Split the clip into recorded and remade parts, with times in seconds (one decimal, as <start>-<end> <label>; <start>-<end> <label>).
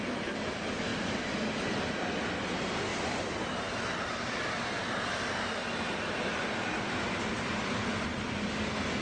0.0-9.0 recorded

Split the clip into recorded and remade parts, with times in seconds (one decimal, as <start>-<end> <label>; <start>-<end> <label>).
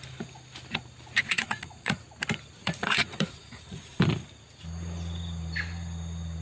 0.0-1.2 recorded; 1.2-2.0 remade; 2.0-2.6 recorded; 2.6-4.0 remade; 4.0-6.4 recorded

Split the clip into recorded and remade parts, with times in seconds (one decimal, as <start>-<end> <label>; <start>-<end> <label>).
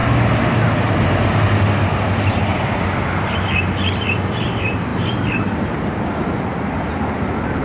0.0-7.6 recorded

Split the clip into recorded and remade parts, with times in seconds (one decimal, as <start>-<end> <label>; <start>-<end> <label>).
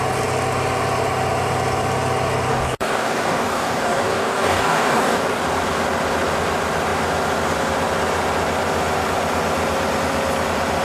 0.0-2.5 recorded; 2.5-5.4 remade; 5.4-10.8 recorded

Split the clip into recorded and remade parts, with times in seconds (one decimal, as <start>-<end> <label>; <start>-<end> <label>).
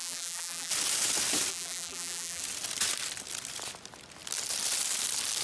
0.0-0.7 remade; 0.7-1.5 recorded; 1.5-2.4 remade; 2.4-5.4 recorded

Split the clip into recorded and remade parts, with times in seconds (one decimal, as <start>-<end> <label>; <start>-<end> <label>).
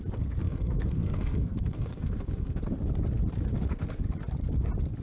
0.0-0.4 recorded; 0.4-2.6 remade; 2.6-5.0 recorded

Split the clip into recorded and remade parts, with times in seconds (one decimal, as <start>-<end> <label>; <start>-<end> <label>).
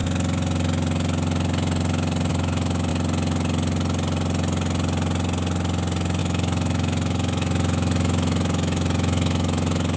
0.0-2.3 recorded; 2.3-2.9 remade; 2.9-6.2 recorded; 6.2-10.0 remade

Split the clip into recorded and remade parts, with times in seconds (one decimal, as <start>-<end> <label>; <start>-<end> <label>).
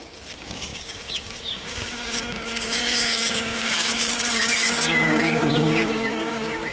0.0-6.7 remade